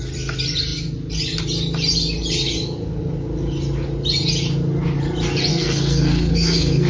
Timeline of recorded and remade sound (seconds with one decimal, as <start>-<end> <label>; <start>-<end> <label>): 0.0-5.5 recorded; 5.5-6.9 remade